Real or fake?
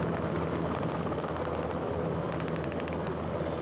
real